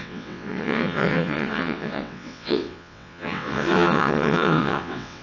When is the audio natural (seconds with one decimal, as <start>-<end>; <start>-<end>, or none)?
none

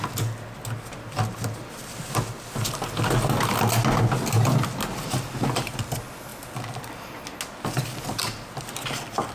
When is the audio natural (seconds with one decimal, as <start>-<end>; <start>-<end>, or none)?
0.0-9.3

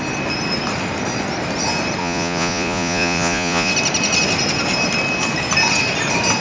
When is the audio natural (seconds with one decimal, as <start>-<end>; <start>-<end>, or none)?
0.0-2.0; 3.7-6.4

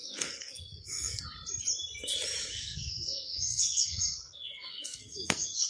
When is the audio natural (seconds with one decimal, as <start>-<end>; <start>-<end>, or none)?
1.2-2.5

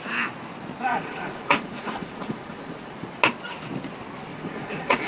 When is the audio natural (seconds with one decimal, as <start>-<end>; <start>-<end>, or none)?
0.0-0.9; 2.9-4.3

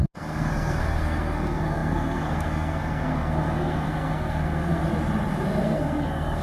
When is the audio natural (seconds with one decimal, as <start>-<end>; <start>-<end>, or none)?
4.8-5.6